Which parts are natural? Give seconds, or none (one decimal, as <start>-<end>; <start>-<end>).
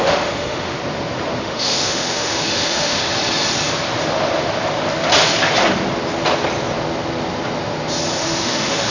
0.8-1.4; 3.0-8.2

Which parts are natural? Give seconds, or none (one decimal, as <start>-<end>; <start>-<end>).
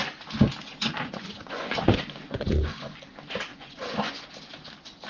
0.0-0.7; 3.0-3.5; 4.3-5.1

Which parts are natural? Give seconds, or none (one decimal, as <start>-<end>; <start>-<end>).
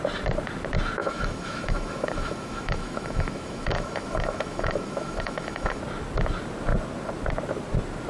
0.0-1.0; 5.8-8.1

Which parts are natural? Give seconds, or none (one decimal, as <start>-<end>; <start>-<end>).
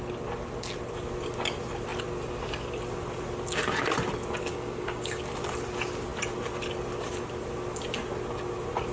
0.0-4.5; 5.2-8.9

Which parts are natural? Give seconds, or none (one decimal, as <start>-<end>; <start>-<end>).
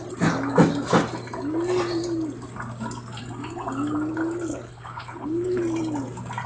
0.0-4.5; 5.6-6.5